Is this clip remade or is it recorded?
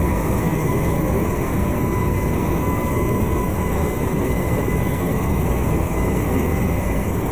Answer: remade